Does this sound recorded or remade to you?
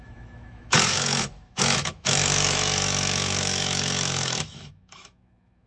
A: remade